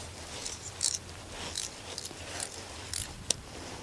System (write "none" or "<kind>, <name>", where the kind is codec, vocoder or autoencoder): none